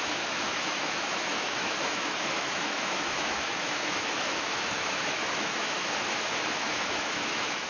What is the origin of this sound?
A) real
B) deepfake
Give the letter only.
B